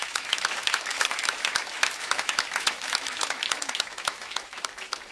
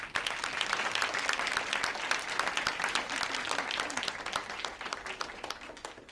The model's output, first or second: first